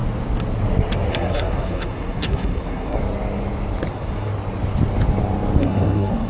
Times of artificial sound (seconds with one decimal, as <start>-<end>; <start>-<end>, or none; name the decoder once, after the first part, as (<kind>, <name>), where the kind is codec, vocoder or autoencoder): 1.1-3.0 (codec, SNAC); 3.9-4.3; 5.6-6.3

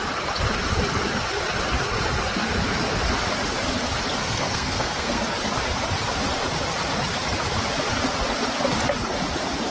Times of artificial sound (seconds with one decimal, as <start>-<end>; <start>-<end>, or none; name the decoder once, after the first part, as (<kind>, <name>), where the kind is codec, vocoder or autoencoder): 4.2-5.2 (codec, SNAC)

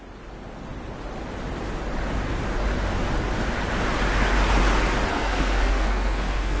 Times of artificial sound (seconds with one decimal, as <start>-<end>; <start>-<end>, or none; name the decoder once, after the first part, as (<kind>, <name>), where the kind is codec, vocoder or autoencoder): 5.1-6.6 (codec, SNAC)

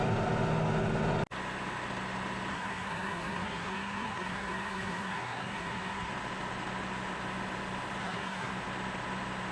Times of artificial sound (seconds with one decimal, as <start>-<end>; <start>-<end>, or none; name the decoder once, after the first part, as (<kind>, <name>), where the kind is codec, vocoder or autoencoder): 2.5-6.1 (codec, SNAC); 8.0-8.5

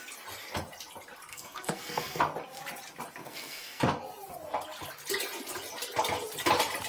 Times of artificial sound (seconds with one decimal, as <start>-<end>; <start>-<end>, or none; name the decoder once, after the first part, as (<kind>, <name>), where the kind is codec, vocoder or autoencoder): 1.3-2.2 (codec, SNAC); 3.2-3.8

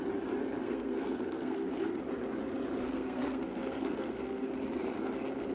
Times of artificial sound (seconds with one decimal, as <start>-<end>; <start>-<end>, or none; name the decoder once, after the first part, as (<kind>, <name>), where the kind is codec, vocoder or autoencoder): 0.6-2.0 (codec, SNAC); 2.8-4.5

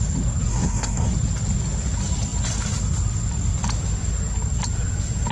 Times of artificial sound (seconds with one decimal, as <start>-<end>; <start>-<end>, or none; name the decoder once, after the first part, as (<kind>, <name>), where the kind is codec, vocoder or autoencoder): 0.5-1.1 (codec, SNAC)

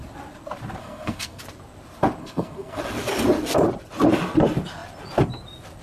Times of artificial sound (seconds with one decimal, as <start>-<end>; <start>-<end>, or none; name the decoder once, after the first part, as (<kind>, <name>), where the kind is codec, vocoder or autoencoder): 0.8-1.4 (codec, SNAC); 2.2-2.8